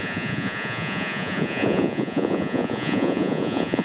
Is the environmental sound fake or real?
fake